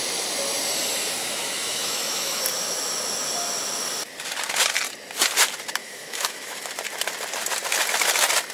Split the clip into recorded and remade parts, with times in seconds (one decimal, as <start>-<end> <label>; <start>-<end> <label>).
0.0-1.2 recorded; 1.2-2.4 remade; 2.4-5.8 recorded; 5.8-6.7 remade; 6.7-8.5 recorded